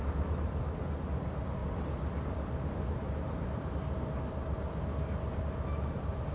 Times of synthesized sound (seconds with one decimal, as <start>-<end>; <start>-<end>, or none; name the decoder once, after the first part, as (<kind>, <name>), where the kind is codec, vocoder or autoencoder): none